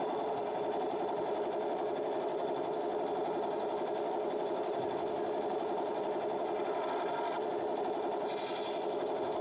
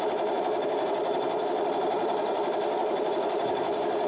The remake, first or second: second